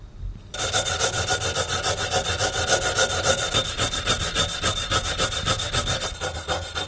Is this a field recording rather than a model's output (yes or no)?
yes